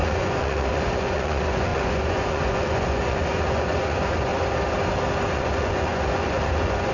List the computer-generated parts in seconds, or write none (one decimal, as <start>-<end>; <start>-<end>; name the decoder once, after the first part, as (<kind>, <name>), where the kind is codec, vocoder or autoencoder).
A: 0.0-4.3 (vocoder, Vocos); 5.3-6.9